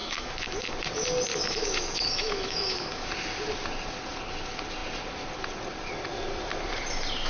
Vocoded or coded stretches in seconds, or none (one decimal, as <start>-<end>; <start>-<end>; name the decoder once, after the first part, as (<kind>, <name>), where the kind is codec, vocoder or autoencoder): 0.0-0.7 (autoencoder, DAC-VAE); 1.3-3.1